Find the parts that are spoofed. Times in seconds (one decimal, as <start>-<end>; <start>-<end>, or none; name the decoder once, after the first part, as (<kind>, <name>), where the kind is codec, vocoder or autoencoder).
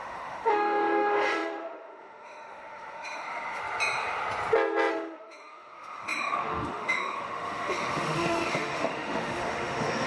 0.0-3.6 (autoencoder, DAC-VAE); 4.9-10.1